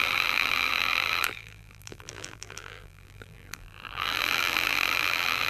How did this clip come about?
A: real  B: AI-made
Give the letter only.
B